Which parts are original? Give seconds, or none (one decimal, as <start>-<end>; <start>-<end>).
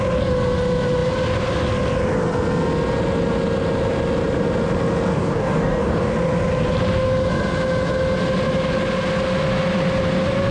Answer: 0.0-5.1; 6.1-10.5